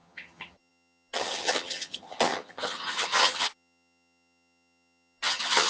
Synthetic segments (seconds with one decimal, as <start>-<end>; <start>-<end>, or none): 0.0-5.7